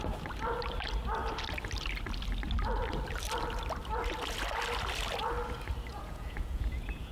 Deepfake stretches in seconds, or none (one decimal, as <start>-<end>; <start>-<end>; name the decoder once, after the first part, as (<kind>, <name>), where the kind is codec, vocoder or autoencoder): 5.9-7.1 (vocoder, Vocos)